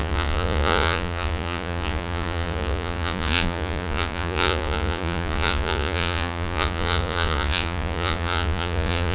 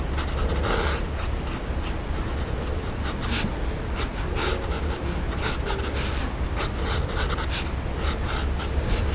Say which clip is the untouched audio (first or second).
second